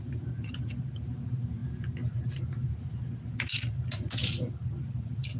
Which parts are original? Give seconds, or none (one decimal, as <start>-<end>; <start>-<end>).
0.0-5.4